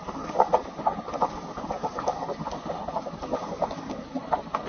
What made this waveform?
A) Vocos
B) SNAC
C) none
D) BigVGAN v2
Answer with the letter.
C